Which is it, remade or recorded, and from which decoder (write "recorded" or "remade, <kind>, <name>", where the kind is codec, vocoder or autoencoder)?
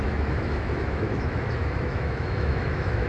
remade, autoencoder, DAC-VAE